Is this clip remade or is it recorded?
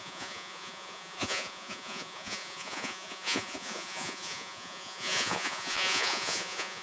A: remade